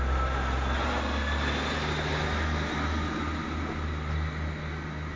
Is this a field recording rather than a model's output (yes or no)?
yes